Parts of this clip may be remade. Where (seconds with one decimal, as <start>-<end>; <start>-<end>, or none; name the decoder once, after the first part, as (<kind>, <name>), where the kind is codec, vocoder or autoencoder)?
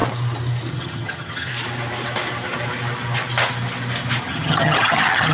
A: 0.7-1.5 (vocoder, HiFi-GAN); 4.2-5.3